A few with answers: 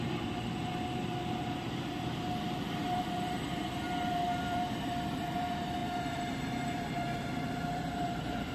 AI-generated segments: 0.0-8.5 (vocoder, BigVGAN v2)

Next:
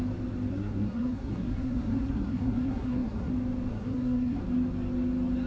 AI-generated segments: 0.5-3.3 (codec, SNAC); 3.7-4.4

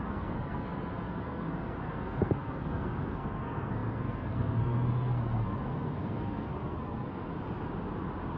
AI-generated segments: 0.0-7.3 (codec, SNAC)

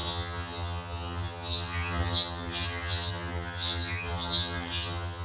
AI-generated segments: 0.0-5.2 (vocoder, HiFi-GAN)